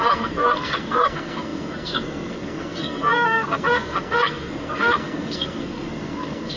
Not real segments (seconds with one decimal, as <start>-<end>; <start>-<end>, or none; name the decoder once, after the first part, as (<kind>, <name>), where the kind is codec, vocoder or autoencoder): 0.0-6.6 (codec, SNAC)